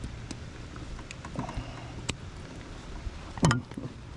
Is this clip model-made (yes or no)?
no